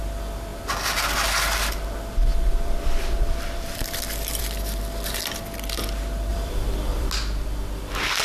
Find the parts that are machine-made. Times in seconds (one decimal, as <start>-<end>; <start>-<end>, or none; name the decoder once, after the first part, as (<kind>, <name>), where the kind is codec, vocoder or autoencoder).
2.5-4.8 (vocoder, BigVGAN v2); 6.3-7.1